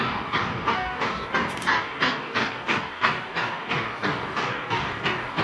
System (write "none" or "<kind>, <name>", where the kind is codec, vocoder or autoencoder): codec, DAC